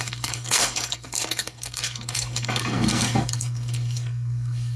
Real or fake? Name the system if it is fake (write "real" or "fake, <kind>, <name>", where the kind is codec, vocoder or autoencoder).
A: fake, codec, SNAC